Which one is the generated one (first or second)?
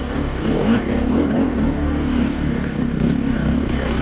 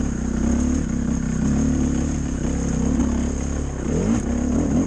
first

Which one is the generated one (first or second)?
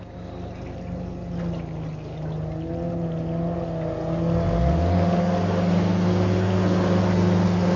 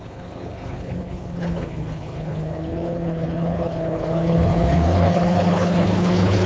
second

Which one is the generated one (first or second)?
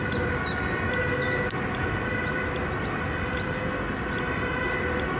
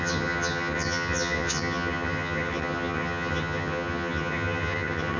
second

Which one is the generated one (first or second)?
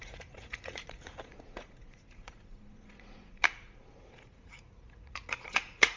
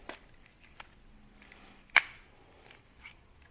first